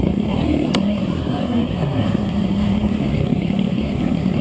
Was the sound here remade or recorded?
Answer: remade